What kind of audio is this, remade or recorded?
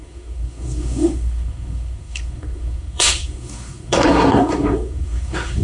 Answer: remade